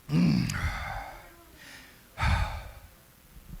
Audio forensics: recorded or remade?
recorded